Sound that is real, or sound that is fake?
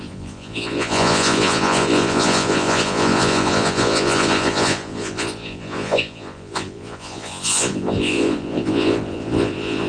fake